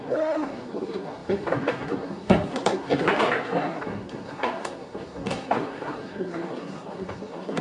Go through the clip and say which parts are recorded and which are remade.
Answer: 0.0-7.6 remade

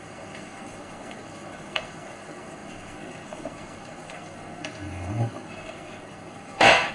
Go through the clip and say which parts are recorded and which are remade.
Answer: 0.0-6.9 remade

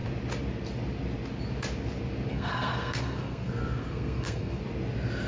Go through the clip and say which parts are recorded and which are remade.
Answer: 0.0-2.3 recorded; 2.3-4.6 remade; 4.6-5.3 recorded

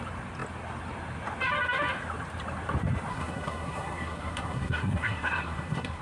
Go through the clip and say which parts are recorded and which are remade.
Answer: 0.0-3.1 recorded; 3.1-6.0 remade

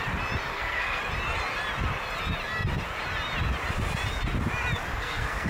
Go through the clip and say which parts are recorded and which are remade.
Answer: 0.0-0.5 recorded; 0.5-1.0 remade; 1.0-4.9 recorded; 4.9-5.5 remade

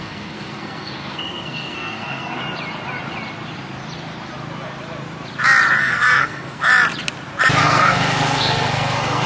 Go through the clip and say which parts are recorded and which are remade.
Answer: 0.0-2.4 remade; 2.4-5.8 recorded; 5.8-6.7 remade; 6.7-7.6 recorded; 7.6-9.3 remade